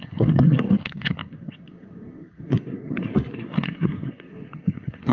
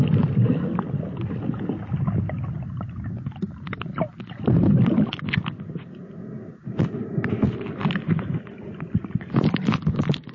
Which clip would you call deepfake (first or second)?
first